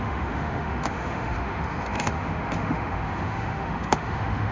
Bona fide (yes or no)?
no